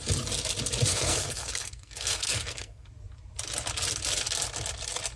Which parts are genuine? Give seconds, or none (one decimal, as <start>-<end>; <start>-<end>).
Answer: 0.0-0.9; 2.9-5.2